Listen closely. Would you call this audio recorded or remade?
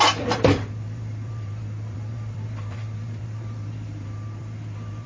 remade